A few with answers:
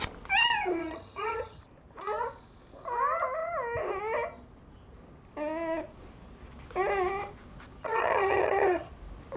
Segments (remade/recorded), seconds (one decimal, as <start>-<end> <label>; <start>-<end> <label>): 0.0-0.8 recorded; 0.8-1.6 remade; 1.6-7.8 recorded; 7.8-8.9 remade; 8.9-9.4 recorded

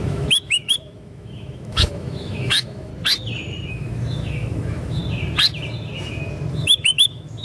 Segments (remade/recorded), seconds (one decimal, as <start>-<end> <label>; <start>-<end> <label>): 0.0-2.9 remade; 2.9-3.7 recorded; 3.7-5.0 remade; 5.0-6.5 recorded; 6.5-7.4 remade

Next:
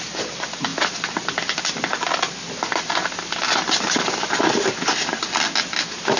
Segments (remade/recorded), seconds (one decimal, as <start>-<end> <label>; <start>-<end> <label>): 0.0-6.2 recorded

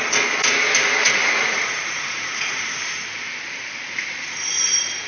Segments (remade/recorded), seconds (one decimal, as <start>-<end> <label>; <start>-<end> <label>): 0.0-1.0 recorded; 1.0-2.9 remade; 2.9-5.1 recorded

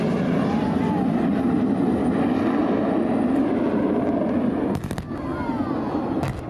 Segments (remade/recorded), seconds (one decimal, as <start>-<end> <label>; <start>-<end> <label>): 0.0-2.6 remade; 2.6-4.1 recorded; 4.1-5.3 remade; 5.3-5.9 recorded; 5.9-6.5 remade

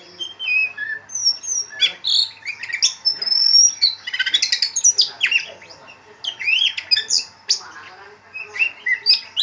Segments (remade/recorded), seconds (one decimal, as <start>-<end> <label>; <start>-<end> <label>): 0.0-9.4 recorded